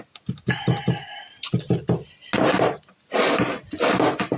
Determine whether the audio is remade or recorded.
recorded